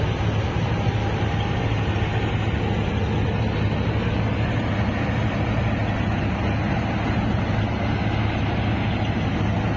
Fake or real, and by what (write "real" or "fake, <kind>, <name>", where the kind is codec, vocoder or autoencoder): real